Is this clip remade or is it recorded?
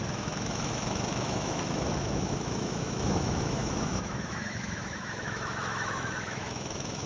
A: remade